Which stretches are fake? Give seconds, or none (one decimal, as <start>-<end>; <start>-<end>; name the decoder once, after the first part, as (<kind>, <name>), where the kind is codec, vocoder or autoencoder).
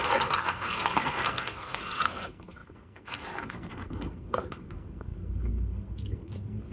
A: 0.0-6.7 (codec, SNAC)